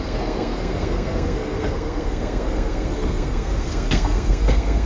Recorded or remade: remade